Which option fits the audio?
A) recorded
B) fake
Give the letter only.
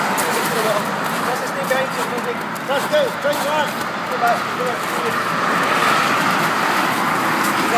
A